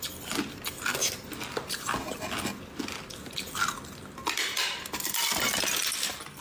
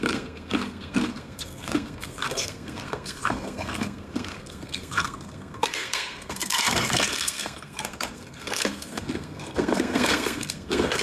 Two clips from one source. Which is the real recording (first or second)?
first